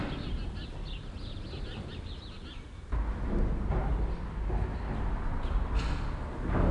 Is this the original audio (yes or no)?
yes